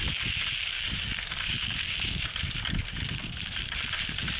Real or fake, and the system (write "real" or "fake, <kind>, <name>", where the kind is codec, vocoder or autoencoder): real